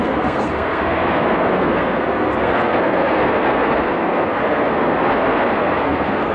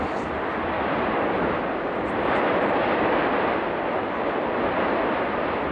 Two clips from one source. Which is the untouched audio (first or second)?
second